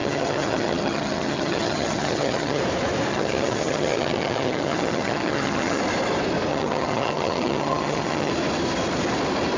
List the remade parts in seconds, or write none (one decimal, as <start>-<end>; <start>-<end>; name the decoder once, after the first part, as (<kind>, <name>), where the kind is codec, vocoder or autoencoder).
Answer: 0.0-2.6 (vocoder, HiFi-GAN); 3.1-5.8; 6.5-8.3